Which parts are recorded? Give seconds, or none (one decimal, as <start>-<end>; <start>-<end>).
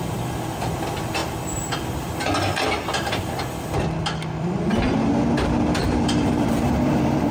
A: 0.0-5.8